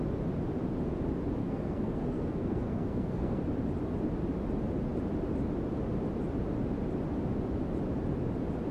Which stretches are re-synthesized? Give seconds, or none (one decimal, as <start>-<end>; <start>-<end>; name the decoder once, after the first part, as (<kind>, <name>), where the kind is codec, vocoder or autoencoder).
1.4-3.4 (codec, SNAC)